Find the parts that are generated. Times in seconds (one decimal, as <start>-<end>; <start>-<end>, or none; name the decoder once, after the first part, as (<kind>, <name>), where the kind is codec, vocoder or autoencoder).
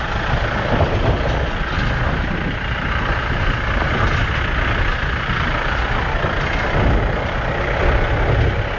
4.1-7.0 (vocoder, BigVGAN v2)